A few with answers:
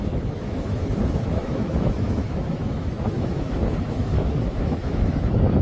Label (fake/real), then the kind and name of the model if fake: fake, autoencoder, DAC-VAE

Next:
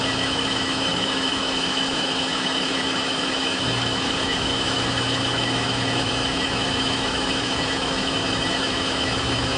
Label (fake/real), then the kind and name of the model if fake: fake, autoencoder, DAC-VAE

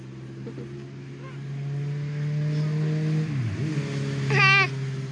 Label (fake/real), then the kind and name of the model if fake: real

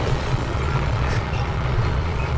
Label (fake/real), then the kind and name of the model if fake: fake, vocoder, Vocos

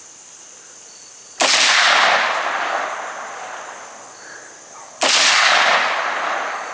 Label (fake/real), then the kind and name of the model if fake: real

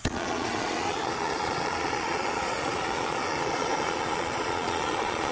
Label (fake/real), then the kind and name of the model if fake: fake, vocoder, Vocos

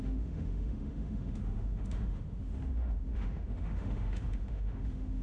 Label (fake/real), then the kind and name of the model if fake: fake, autoencoder, DAC-VAE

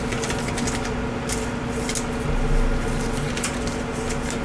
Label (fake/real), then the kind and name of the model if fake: real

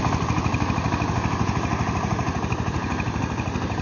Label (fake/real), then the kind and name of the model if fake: real